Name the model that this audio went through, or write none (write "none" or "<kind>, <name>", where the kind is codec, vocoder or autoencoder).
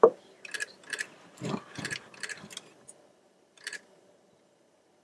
none